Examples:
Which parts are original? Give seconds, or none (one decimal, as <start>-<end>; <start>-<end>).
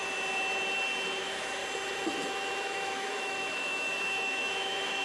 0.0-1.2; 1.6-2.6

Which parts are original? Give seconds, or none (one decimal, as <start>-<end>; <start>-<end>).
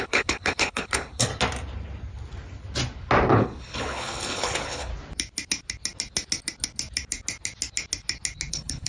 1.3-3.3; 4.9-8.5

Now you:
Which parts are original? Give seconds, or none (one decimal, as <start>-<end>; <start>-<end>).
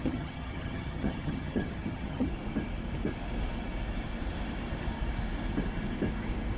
2.3-6.6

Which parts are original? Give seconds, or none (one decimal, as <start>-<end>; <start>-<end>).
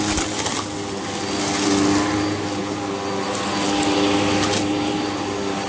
0.0-5.7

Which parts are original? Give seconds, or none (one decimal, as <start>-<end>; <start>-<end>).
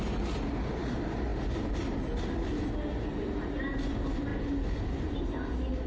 0.0-5.9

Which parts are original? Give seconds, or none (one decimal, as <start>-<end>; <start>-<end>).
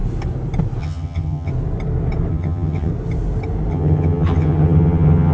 0.0-0.8; 1.5-2.3; 2.9-3.7